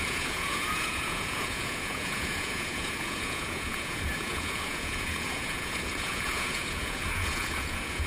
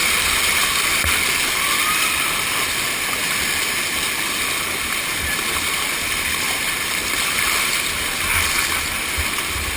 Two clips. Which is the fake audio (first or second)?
first